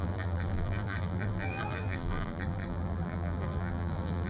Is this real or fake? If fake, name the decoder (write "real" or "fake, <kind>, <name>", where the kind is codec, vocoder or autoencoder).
fake, vocoder, BigVGAN v2